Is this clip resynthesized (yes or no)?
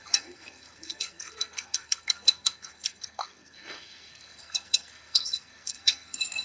yes